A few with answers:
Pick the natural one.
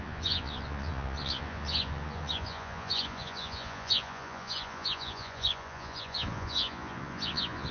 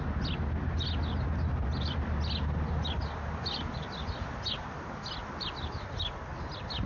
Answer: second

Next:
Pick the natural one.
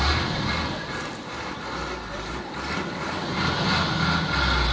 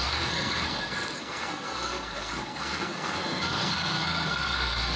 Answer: first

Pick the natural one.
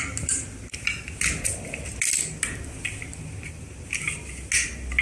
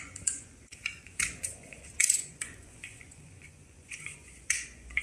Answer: first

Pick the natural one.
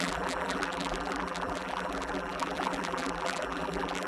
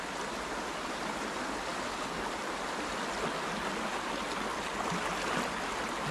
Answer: second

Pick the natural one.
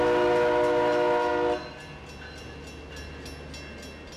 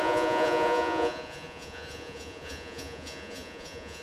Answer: first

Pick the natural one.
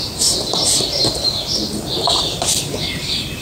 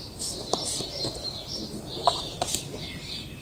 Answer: second